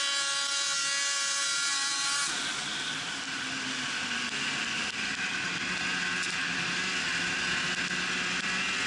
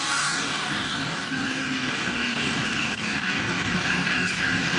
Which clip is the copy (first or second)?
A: second